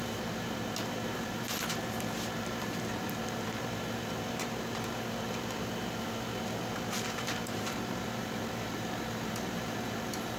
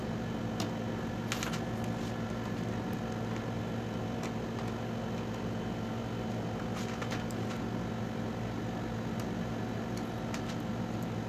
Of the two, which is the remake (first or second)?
first